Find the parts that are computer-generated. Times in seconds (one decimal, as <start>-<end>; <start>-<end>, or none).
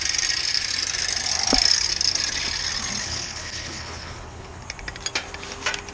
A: 3.0-4.6